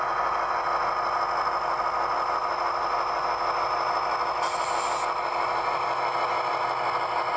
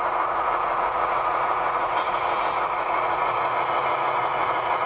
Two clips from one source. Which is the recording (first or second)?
first